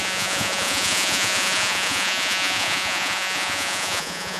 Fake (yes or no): yes